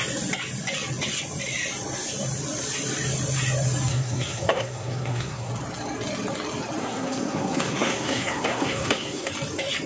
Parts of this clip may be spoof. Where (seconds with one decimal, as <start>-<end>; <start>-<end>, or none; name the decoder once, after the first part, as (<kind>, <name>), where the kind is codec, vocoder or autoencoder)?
3.9-5.5 (codec, SNAC); 6.8-9.3